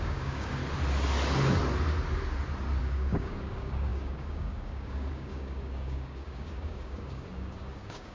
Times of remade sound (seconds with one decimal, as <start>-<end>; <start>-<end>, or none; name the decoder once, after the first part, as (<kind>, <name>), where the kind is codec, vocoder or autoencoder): 0.0-0.6 (codec, DAC); 2.8-8.1